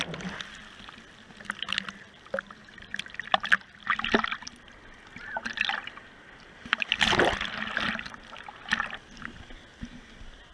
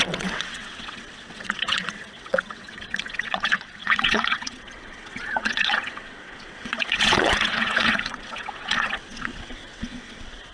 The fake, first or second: second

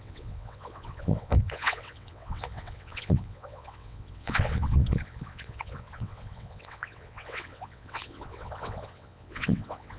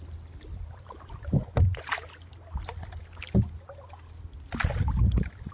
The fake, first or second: first